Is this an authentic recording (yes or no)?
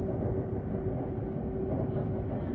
yes